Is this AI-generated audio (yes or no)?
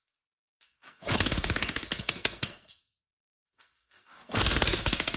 yes